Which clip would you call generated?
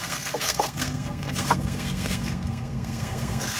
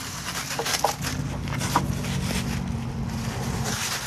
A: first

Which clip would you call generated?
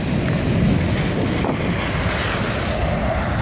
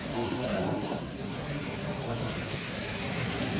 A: second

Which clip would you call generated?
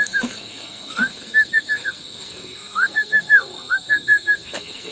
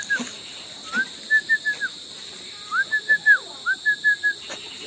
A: first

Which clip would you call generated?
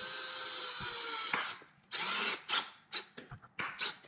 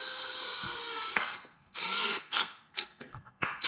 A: second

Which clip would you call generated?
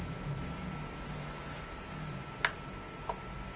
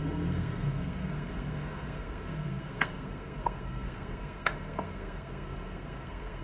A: second